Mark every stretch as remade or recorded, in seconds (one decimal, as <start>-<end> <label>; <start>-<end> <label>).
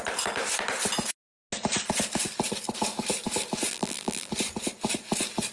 0.0-3.7 recorded; 3.7-4.3 remade; 4.3-5.5 recorded